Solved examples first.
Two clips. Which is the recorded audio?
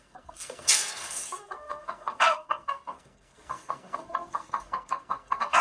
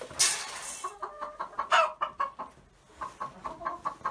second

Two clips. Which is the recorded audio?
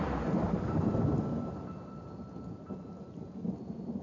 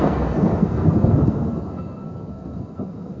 first